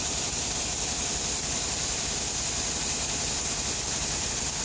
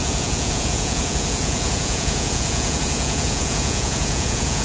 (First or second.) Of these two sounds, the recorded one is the first